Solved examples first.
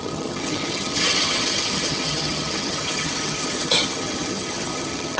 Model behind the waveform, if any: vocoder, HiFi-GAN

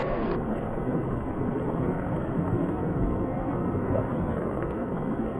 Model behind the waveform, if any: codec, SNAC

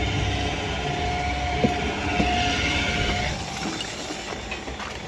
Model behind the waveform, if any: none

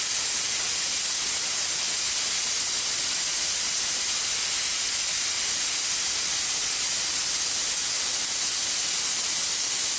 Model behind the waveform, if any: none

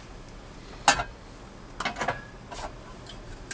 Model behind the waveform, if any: none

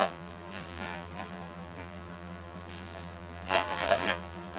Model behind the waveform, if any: vocoder, BigVGAN v2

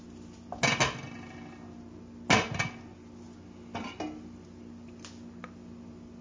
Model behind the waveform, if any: none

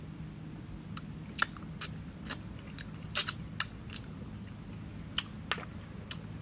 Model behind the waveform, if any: none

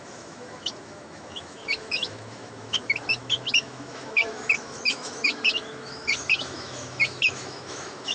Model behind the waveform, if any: autoencoder, DAC-VAE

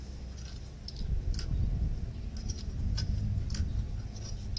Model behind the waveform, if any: none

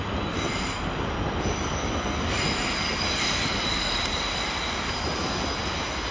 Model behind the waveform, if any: none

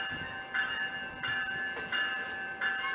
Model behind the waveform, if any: none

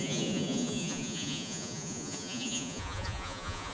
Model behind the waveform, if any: vocoder, Vocos